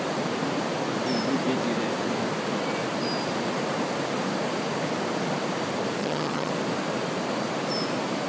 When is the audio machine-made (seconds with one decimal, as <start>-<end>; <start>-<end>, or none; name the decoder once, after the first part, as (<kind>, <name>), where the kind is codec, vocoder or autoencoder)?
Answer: 6.0-6.5 (vocoder, HiFi-GAN)